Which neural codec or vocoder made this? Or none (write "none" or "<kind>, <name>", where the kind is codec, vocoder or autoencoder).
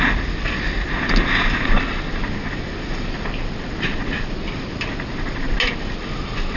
none